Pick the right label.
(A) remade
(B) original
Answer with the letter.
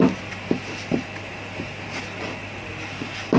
B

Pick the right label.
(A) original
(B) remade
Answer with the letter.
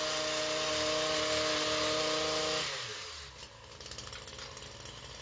A